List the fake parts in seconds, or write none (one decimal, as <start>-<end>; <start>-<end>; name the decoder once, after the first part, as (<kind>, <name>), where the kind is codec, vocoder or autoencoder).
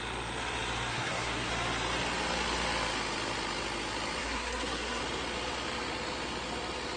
0.9-1.5 (codec, SNAC); 4.2-5.0